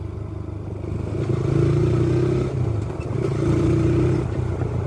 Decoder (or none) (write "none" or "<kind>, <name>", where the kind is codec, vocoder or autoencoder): none